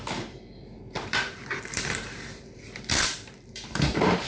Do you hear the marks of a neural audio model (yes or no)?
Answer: yes